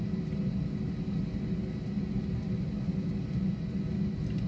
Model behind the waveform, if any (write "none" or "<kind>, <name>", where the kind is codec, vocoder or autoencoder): none